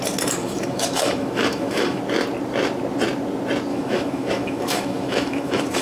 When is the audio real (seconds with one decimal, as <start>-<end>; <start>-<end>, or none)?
0.0-0.4; 2.0-3.7

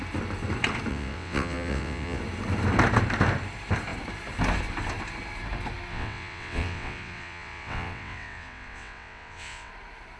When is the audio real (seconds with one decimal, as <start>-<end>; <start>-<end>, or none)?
0.0-0.9; 2.2-5.9; 9.7-10.2